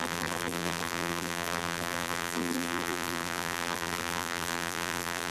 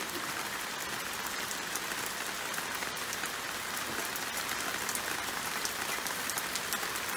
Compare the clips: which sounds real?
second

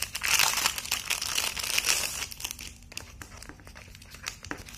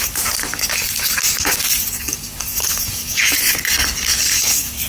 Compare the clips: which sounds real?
first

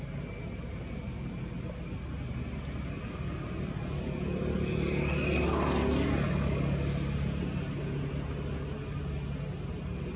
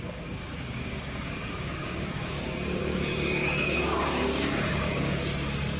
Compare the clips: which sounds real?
first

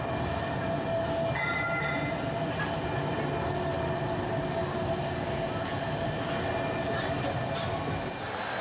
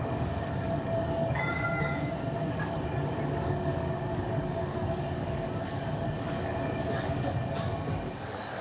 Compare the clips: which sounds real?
first